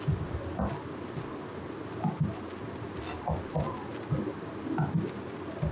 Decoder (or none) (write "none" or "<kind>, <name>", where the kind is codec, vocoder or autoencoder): none